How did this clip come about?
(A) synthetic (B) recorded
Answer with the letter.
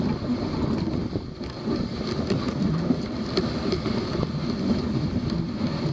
B